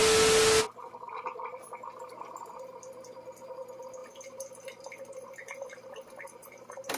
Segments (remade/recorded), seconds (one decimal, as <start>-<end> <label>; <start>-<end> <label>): 0.0-4.0 recorded; 4.0-4.6 remade; 4.6-7.0 recorded

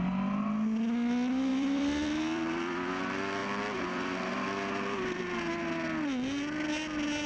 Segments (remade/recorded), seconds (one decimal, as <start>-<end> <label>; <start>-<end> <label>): 0.0-1.5 recorded; 1.5-2.9 remade; 2.9-3.4 recorded; 3.4-5.2 remade; 5.2-7.3 recorded